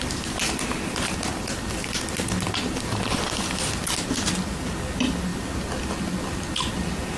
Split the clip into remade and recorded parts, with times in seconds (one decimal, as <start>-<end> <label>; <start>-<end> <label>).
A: 0.0-7.2 recorded